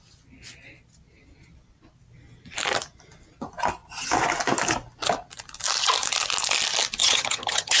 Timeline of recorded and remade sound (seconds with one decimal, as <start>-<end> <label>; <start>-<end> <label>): 0.0-7.0 recorded; 7.0-7.8 remade